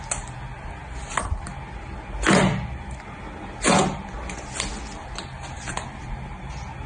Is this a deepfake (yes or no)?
no